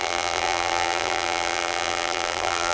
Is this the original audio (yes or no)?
no